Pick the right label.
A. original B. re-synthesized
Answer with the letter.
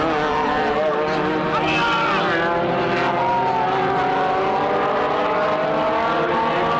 A